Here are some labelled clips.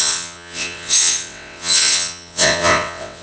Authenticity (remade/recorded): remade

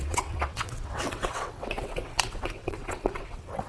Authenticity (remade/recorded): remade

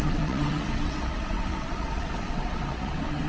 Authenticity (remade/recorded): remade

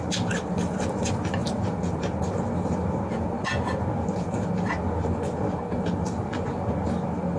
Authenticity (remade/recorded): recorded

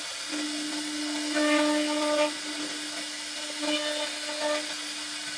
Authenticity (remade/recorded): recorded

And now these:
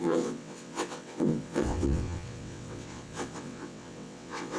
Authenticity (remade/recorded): remade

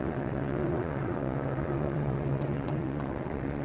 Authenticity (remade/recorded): remade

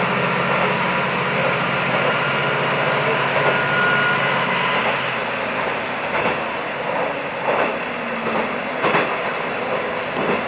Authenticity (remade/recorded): recorded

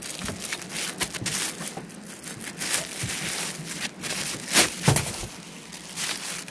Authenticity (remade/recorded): recorded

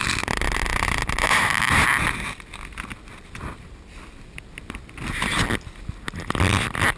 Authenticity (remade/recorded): recorded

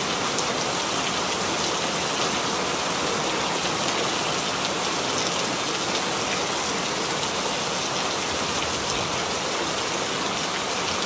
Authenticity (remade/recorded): recorded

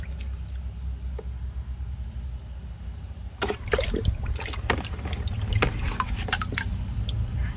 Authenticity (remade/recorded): recorded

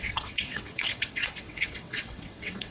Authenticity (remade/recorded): remade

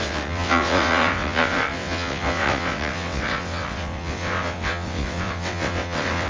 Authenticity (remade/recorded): remade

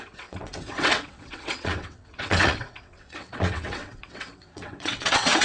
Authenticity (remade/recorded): remade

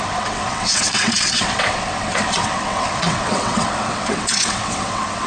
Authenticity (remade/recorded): remade